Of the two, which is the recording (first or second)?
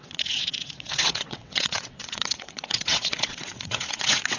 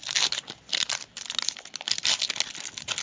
second